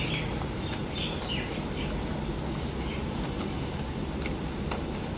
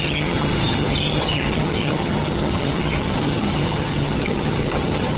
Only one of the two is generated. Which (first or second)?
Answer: second